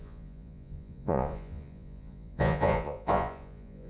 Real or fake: fake